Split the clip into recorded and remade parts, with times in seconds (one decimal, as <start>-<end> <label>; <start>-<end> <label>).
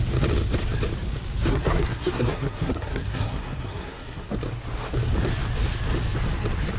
0.0-1.5 recorded; 1.5-4.3 remade; 4.3-6.8 recorded